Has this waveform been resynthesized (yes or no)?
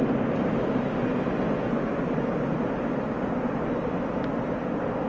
no